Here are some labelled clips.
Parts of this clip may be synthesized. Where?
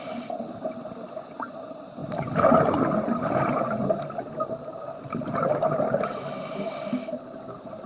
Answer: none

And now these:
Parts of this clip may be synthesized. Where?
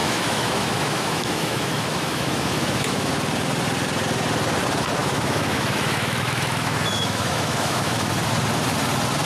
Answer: 0.0-3.1 (autoencoder, DAC-VAE); 5.0-8.1